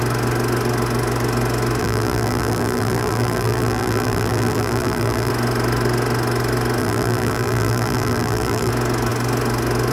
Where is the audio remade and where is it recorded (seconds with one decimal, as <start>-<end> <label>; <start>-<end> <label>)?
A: 0.0-1.8 recorded; 1.8-5.3 remade; 5.3-6.8 recorded; 6.8-8.7 remade; 8.7-9.9 recorded

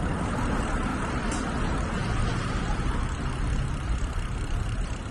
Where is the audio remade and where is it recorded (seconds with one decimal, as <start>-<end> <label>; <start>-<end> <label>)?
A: 0.0-2.0 recorded; 2.0-5.1 remade

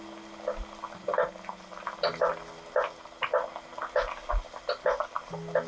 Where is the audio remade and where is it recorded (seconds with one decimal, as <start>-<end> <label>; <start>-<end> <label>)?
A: 0.0-5.7 recorded

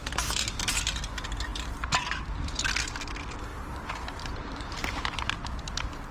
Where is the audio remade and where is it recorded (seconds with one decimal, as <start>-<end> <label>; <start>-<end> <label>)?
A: 0.0-3.5 recorded; 3.5-5.2 remade; 5.2-6.1 recorded